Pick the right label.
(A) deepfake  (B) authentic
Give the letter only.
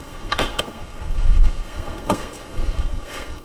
A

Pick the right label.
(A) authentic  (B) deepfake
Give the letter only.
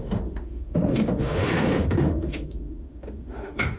B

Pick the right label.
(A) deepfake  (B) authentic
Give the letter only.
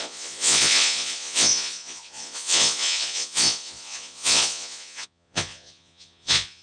A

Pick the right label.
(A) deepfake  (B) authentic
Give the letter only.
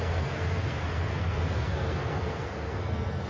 A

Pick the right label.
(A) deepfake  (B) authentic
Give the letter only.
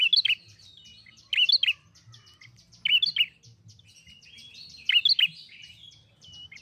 B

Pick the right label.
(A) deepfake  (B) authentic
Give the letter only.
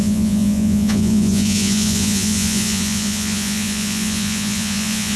A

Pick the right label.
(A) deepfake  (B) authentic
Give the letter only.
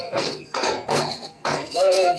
A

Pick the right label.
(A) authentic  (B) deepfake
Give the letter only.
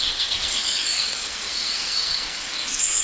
B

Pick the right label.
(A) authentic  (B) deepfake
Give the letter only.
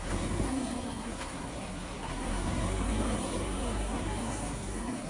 B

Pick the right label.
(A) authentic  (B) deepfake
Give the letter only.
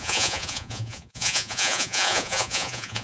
B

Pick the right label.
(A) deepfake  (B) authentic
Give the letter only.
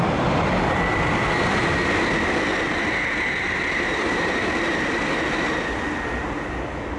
B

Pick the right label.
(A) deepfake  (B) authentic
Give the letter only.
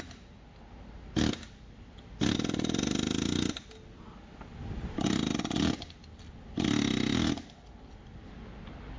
B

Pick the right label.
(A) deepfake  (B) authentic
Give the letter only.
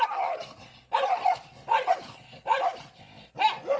B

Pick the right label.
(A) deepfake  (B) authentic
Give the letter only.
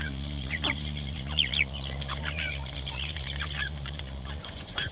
A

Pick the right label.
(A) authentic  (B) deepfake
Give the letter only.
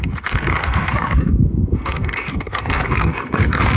B